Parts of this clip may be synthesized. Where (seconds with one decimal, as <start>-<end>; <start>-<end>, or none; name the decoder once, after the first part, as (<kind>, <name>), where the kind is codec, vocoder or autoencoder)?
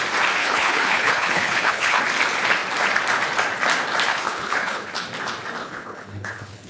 0.4-2.0 (codec, HILCodec); 4.1-4.9; 5.6-6.7